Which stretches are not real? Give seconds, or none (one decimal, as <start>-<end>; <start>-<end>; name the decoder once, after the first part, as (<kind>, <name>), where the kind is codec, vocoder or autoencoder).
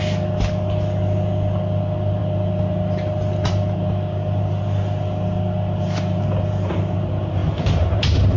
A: none